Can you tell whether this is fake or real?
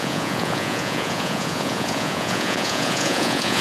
fake